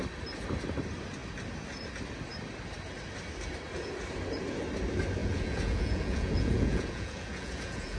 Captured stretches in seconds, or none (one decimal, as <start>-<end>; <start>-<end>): 0.0-5.2